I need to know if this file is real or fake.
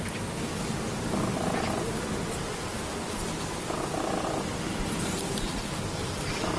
real